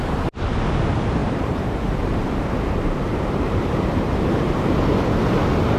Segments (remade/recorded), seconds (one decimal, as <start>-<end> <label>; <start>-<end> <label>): 0.0-1.2 recorded; 1.2-4.7 remade; 4.7-5.8 recorded